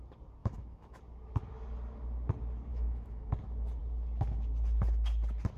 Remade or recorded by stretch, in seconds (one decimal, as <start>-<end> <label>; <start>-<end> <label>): 0.0-0.4 recorded; 0.4-1.0 remade; 1.0-2.7 recorded; 2.7-3.3 remade; 3.3-5.6 recorded